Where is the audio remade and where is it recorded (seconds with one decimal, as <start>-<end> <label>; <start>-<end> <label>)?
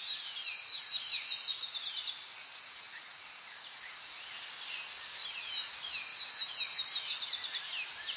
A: 0.0-0.7 recorded; 0.7-5.5 remade; 5.5-8.2 recorded